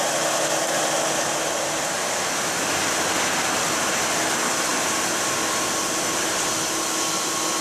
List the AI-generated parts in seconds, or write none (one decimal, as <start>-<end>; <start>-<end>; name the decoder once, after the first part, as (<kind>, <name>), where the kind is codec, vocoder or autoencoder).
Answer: none